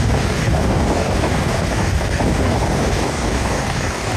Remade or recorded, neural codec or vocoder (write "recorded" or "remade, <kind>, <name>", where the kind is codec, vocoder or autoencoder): remade, codec, DAC